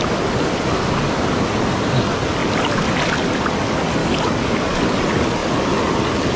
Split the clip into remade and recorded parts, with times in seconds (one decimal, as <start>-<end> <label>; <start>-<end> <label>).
0.0-4.0 recorded; 4.0-5.0 remade; 5.0-6.4 recorded